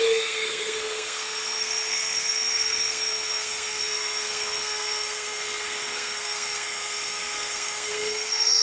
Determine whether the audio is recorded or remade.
remade